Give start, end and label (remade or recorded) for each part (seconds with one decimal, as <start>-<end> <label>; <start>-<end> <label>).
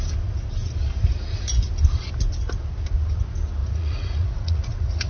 0.0-3.6 recorded; 3.6-5.1 remade